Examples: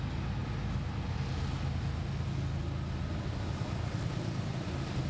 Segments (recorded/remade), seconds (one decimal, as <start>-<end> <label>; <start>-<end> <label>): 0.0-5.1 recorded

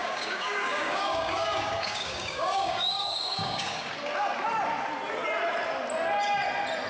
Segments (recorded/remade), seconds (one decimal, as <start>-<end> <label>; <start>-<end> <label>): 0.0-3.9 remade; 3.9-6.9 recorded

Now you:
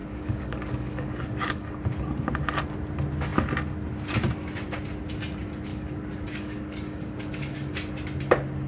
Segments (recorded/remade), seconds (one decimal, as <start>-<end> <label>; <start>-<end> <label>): 0.0-1.7 remade; 1.7-5.7 recorded; 5.7-7.7 remade; 7.7-8.7 recorded